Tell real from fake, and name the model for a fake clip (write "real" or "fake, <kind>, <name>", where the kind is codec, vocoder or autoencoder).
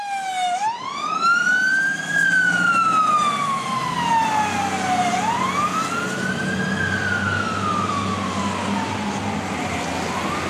real